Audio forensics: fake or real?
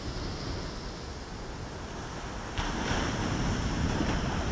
real